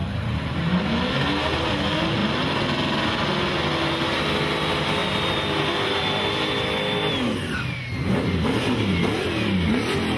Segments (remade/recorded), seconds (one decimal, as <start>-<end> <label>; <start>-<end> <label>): 0.0-0.8 remade; 0.8-10.2 recorded